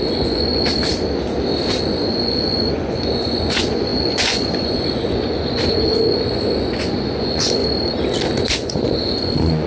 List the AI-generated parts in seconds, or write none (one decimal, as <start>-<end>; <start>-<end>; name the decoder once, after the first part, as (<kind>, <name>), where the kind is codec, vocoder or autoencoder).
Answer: 0.0-0.7 (vocoder, Vocos); 1.8-7.6; 8.4-9.7